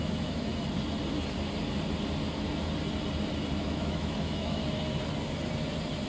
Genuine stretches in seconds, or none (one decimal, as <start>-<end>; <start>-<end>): 0.5-3.6; 4.6-6.1